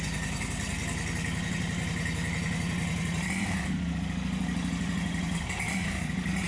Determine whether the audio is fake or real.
real